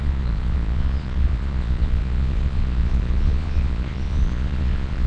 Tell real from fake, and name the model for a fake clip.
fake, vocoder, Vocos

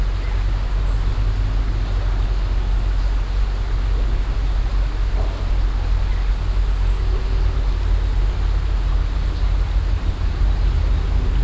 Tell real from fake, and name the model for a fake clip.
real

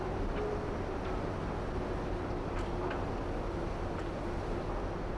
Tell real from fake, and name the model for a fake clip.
real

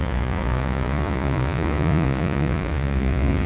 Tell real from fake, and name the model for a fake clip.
fake, vocoder, Vocos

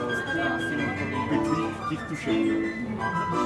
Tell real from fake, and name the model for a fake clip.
real